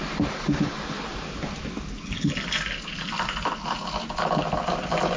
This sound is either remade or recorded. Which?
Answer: recorded